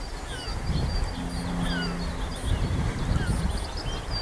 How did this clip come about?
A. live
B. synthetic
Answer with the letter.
A